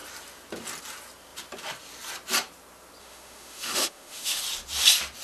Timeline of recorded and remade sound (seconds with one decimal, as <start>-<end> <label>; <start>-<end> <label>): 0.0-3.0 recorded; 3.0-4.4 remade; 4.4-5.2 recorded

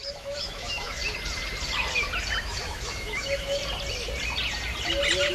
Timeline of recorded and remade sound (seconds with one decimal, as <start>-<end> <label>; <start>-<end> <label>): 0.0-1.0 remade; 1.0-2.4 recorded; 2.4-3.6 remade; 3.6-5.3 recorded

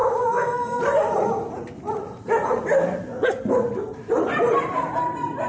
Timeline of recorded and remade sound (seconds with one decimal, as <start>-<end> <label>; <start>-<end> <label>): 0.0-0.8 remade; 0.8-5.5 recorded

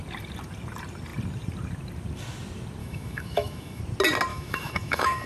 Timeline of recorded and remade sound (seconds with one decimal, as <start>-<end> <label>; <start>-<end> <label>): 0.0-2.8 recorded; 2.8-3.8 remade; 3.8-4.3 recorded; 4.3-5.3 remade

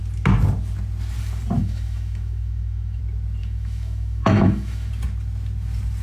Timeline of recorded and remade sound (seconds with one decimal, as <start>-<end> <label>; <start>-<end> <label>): 0.0-1.6 recorded; 1.6-3.0 remade; 3.0-3.4 recorded; 3.4-4.9 remade; 4.9-6.0 recorded

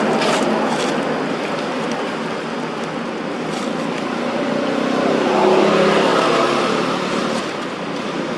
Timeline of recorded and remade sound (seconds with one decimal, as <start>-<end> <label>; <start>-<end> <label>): 0.0-8.4 recorded